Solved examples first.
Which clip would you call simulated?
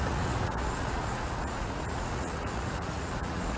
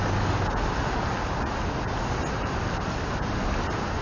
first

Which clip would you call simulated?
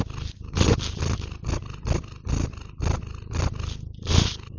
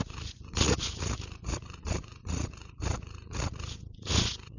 second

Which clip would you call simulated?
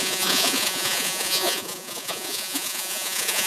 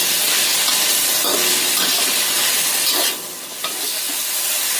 first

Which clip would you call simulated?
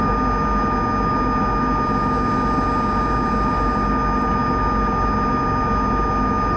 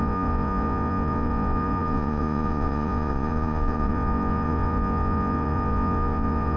second